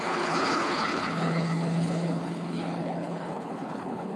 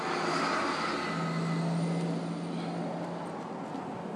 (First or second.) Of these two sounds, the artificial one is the first